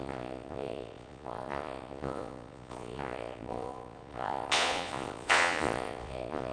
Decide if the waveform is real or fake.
fake